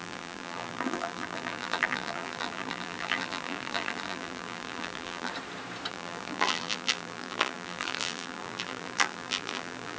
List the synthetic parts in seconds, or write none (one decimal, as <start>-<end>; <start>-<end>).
0.0-5.3; 5.9-10.0